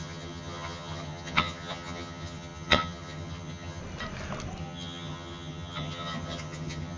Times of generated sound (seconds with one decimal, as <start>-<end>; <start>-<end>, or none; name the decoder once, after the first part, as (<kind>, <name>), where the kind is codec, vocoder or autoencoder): 0.0-3.8 (vocoder, HiFi-GAN); 4.6-7.0